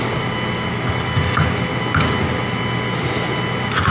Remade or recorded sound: recorded